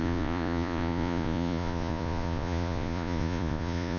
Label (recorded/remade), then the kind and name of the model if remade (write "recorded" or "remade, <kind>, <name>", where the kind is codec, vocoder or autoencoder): remade, vocoder, Vocos